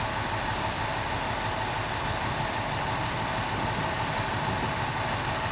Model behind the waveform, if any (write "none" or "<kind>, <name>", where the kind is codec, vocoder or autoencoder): none